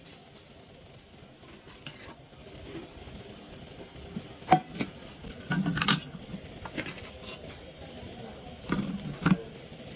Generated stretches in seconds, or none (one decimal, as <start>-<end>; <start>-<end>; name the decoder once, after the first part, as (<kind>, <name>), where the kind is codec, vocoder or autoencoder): none

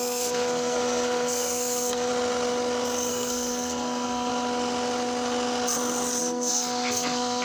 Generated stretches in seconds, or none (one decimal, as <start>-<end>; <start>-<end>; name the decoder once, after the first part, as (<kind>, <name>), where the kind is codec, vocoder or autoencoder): 0.0-2.1 (codec, SNAC); 3.1-4.3; 6.2-7.4